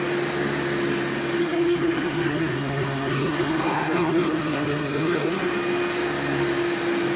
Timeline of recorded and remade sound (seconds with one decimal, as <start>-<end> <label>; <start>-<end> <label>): 0.0-1.4 recorded; 1.4-5.5 remade; 5.5-7.2 recorded